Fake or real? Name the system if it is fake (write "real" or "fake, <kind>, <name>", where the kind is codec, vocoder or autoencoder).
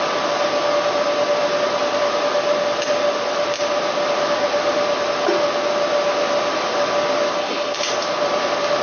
real